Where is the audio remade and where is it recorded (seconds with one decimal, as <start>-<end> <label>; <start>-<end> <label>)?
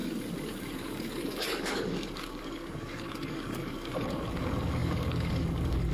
0.0-5.9 remade